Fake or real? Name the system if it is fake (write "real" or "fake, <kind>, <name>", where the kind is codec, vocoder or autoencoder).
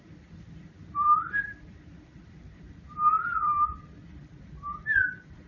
fake, vocoder, BigVGAN v2